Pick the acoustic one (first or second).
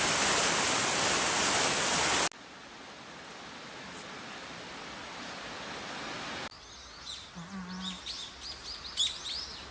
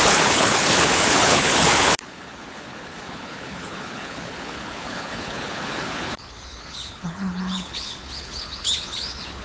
first